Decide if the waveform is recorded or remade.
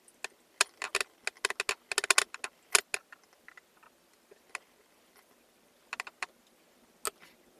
recorded